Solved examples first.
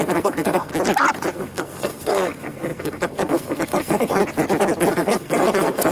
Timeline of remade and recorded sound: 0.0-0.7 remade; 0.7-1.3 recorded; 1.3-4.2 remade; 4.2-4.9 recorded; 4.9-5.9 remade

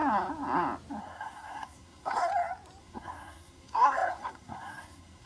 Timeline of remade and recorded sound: 0.0-1.0 recorded; 1.0-2.3 remade; 2.3-2.8 recorded; 2.8-5.3 remade

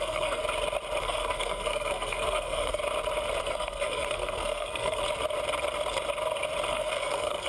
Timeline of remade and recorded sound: 0.0-0.4 remade; 0.4-1.0 recorded; 1.0-2.8 remade; 2.8-3.4 recorded; 3.4-5.0 remade; 5.0-6.7 recorded; 6.7-7.5 remade

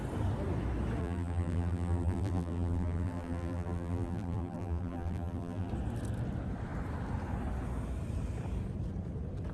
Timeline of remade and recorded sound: 0.0-1.0 recorded; 1.0-5.7 remade; 5.7-9.5 recorded

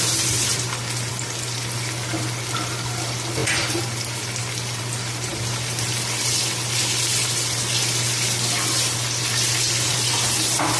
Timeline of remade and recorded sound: 0.0-10.8 recorded

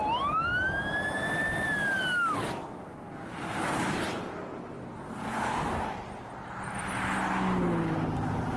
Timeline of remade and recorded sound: 0.0-8.6 recorded

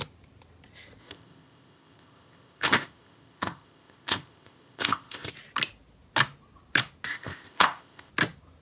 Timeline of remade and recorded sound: 0.0-1.0 recorded; 1.0-5.3 remade; 5.3-7.1 recorded; 7.1-8.1 remade; 8.1-8.6 recorded